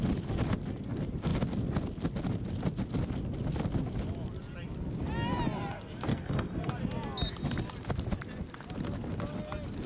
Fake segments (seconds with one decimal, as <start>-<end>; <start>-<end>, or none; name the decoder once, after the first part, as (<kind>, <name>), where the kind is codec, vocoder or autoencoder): 6.1-6.7 (codec, SNAC)